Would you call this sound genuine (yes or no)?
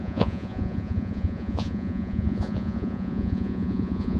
no